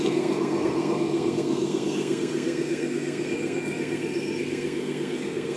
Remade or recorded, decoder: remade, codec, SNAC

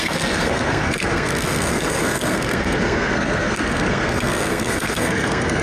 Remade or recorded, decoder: remade, codec, SNAC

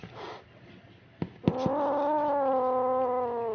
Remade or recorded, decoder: recorded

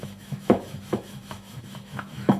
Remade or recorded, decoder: remade, autoencoder, DAC-VAE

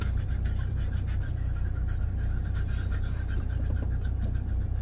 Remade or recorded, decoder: recorded